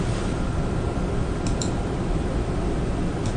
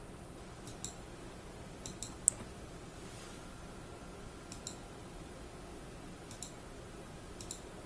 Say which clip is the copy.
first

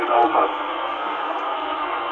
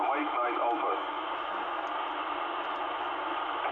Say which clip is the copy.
first